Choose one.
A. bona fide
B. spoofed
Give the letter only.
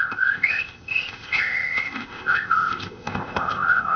B